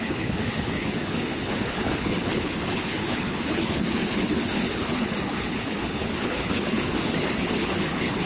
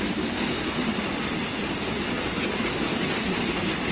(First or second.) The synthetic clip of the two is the first